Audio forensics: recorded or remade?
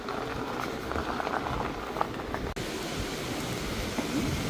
recorded